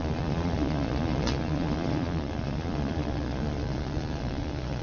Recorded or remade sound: remade